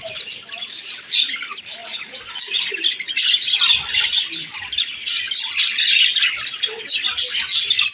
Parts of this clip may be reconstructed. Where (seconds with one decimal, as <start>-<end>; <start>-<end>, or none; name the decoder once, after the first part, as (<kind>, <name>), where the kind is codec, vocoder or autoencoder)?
1.8-2.7 (vocoder, Vocos)